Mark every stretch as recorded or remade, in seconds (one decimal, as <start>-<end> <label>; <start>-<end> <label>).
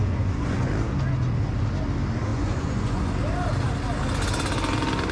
0.0-0.7 remade; 0.7-2.3 recorded; 2.3-3.1 remade; 3.1-5.1 recorded